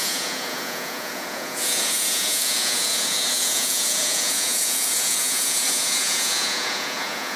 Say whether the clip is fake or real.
fake